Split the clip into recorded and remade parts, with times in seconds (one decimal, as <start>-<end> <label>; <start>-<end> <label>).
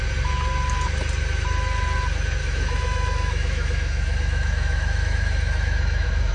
0.0-2.4 recorded; 2.4-6.3 remade